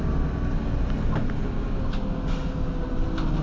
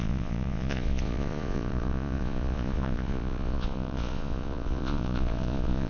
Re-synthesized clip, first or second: second